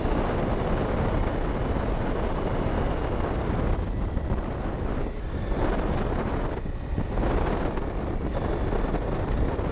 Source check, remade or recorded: recorded